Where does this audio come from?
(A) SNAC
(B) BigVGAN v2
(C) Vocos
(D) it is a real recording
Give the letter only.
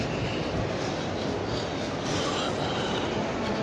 D